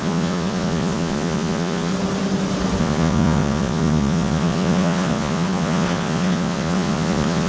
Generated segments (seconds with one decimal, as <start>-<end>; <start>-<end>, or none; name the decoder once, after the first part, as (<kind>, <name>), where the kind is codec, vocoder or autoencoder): 0.0-1.9 (vocoder, Vocos); 2.8-7.5